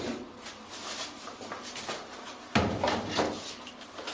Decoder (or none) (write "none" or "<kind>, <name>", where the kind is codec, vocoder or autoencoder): none